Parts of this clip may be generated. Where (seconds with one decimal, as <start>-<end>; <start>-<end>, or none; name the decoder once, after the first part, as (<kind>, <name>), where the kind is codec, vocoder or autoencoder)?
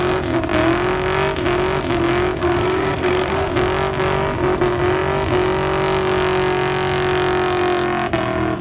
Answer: 2.4-3.5 (codec, SNAC)